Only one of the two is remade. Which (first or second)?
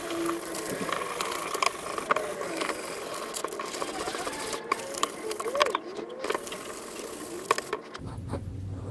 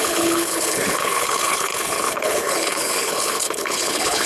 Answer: second